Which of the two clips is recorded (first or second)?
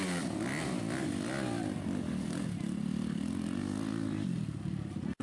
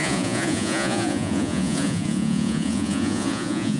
first